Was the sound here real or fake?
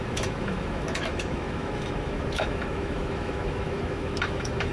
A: fake